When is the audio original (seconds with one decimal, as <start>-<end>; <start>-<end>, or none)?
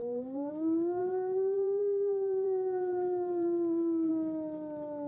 0.5-1.0; 4.1-5.1